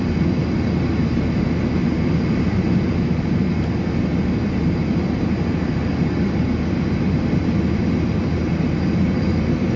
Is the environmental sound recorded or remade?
recorded